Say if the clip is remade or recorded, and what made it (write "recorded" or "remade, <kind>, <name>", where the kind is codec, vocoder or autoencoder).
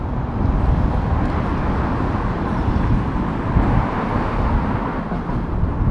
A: recorded